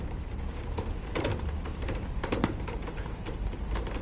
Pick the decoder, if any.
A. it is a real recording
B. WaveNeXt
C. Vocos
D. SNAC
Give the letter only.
A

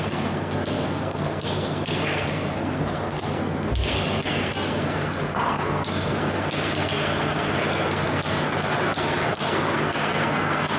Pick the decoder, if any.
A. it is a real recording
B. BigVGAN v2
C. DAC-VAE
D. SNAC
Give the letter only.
D